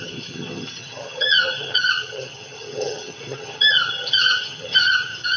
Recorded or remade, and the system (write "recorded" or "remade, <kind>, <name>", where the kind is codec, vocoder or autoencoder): remade, vocoder, HiFi-GAN